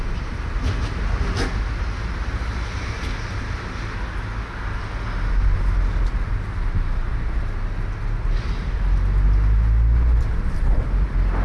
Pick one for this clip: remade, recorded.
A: recorded